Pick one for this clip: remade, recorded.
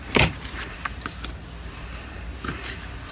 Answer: recorded